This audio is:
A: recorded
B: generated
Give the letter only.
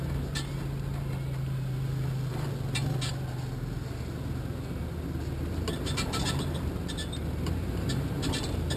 A